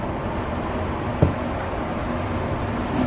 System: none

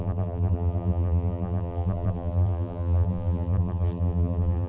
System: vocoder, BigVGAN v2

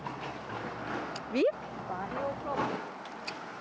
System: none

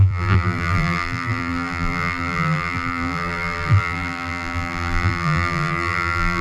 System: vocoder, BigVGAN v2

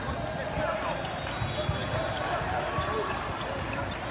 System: none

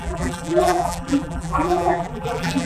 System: vocoder, BigVGAN v2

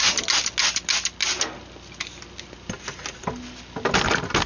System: none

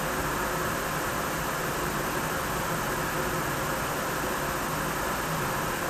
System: none